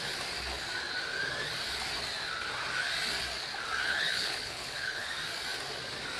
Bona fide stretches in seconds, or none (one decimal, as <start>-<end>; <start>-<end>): 0.0-3.8; 5.1-6.2